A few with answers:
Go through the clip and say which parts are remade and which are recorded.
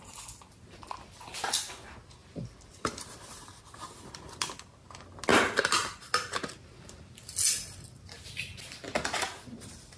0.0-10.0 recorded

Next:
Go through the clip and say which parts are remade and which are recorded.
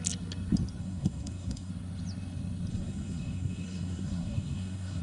0.0-0.8 recorded; 0.8-1.7 remade; 1.7-2.7 recorded; 2.7-5.0 remade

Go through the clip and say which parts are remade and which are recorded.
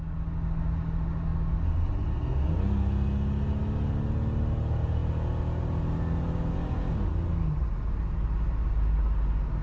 0.0-9.6 recorded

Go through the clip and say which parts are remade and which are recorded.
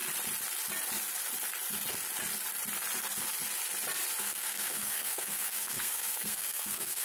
0.0-4.2 recorded; 4.2-7.0 remade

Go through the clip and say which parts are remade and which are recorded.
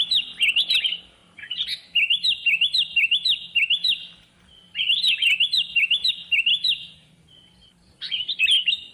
0.0-8.9 recorded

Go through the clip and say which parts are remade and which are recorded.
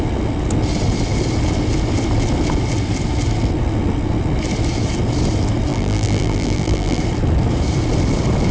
0.0-5.7 recorded; 5.7-7.0 remade; 7.0-8.5 recorded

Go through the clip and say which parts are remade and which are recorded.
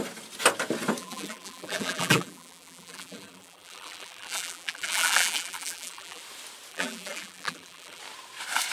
0.0-1.0 recorded; 1.0-6.2 remade; 6.2-6.7 recorded; 6.7-8.0 remade; 8.0-8.7 recorded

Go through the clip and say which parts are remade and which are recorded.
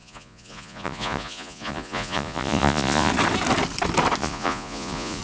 0.0-3.1 remade; 3.1-4.2 recorded; 4.2-5.2 remade